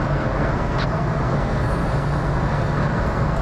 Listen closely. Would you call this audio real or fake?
fake